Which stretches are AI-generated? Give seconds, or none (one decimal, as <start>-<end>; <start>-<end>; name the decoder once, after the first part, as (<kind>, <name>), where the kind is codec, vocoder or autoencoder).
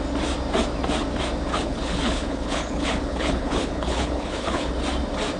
1.5-4.7 (codec, HILCodec)